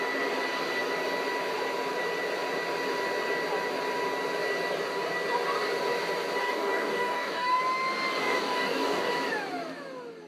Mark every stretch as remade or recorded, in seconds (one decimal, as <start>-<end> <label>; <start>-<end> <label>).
0.0-6.4 recorded; 6.4-7.6 remade; 7.6-8.2 recorded; 8.2-9.1 remade; 9.1-10.3 recorded